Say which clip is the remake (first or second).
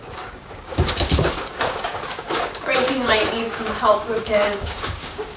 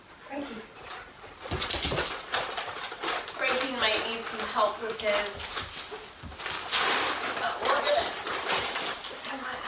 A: first